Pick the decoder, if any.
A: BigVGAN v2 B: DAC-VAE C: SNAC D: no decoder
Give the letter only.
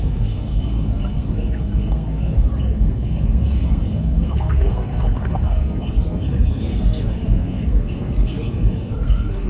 C